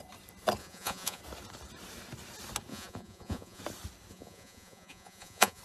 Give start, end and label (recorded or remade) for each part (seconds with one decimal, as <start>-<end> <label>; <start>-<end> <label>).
0.0-0.6 recorded; 0.6-1.2 remade; 1.2-2.7 recorded; 2.7-3.6 remade; 3.6-4.1 recorded; 4.1-5.6 remade